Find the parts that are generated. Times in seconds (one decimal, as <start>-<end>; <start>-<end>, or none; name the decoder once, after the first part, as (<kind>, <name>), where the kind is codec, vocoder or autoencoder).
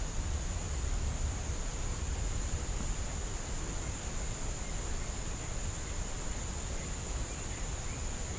none